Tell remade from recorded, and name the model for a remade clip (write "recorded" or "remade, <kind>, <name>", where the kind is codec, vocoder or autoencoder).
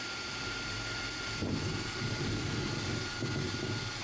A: remade, vocoder, BigVGAN v2